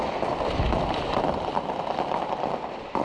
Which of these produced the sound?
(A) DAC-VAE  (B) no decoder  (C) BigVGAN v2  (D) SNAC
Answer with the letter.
B